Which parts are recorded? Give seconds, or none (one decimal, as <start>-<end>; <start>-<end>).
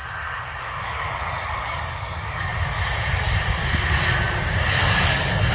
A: 0.0-0.6; 2.5-4.7